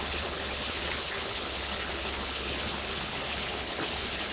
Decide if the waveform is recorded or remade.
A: remade